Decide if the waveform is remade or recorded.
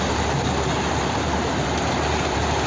remade